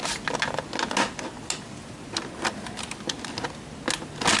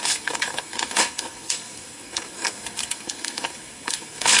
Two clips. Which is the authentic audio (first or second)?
first